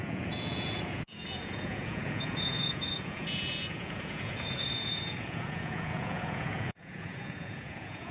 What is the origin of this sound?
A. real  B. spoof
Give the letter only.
B